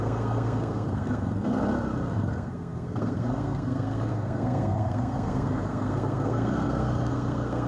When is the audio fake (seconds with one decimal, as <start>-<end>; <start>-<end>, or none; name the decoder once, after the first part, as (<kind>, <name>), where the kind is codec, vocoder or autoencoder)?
0.0-1.6 (codec, SNAC); 2.1-7.7